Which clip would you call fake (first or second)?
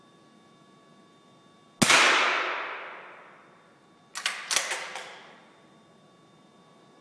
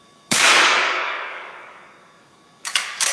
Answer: second